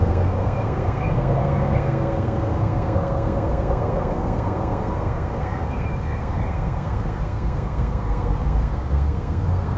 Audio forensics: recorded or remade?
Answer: remade